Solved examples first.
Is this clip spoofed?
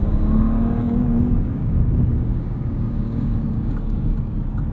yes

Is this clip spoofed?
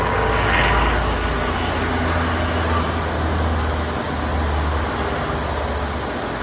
no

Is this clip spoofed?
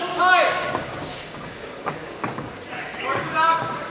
yes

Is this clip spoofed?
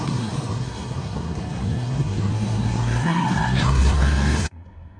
yes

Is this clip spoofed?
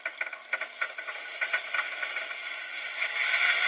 yes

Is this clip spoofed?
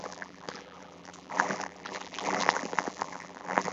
yes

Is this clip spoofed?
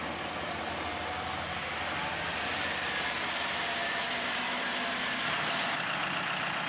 no